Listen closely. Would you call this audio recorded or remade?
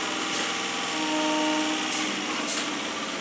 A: recorded